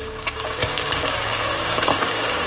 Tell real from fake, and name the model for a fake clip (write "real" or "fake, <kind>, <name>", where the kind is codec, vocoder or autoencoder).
fake, codec, DAC